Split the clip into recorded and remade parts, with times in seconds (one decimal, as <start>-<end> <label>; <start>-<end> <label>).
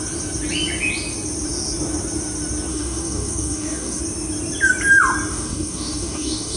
0.0-2.7 recorded; 2.7-4.0 remade; 4.0-5.3 recorded; 5.3-6.6 remade